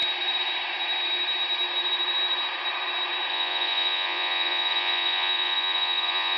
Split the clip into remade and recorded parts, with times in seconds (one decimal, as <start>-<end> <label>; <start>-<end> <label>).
0.0-3.3 recorded; 3.3-6.4 remade